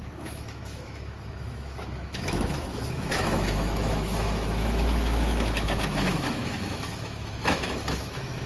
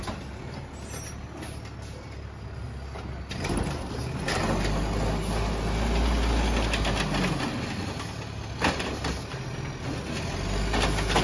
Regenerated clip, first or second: first